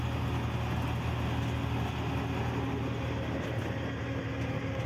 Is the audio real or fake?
real